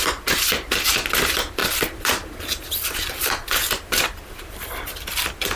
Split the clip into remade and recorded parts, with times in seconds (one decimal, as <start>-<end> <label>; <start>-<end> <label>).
0.0-1.6 recorded; 1.6-2.4 remade; 2.4-3.6 recorded; 3.6-4.9 remade; 4.9-5.6 recorded

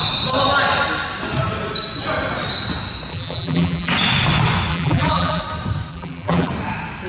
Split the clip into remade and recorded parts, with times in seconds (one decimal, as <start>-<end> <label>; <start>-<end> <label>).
0.0-3.1 recorded; 3.1-3.9 remade; 3.9-4.7 recorded; 4.7-5.4 remade; 5.4-5.9 recorded; 5.9-6.5 remade; 6.5-7.1 recorded

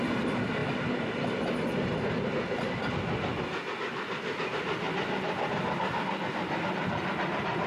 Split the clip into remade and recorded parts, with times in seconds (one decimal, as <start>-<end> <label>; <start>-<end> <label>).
0.0-7.7 recorded

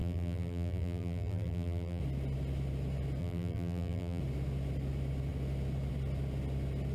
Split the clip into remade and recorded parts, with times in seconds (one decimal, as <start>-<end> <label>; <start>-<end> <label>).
0.0-2.0 remade; 2.0-3.2 recorded; 3.2-4.2 remade; 4.2-6.9 recorded

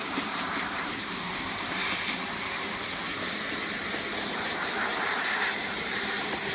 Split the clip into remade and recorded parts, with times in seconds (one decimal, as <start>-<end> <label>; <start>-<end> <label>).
0.0-1.8 remade; 1.8-4.3 recorded; 4.3-6.5 remade